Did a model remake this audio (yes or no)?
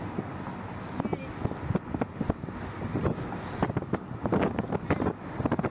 no